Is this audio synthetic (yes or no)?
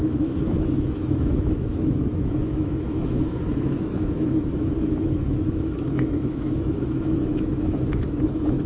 yes